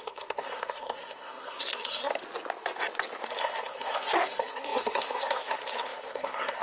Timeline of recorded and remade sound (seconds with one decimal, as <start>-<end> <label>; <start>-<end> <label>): 0.0-2.1 remade; 2.1-3.3 recorded; 3.3-6.6 remade